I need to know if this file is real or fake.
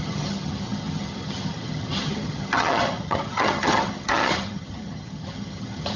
fake